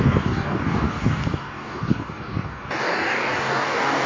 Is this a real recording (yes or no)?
no